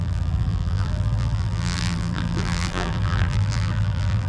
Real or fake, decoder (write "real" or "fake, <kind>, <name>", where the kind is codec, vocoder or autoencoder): fake, vocoder, BigVGAN v2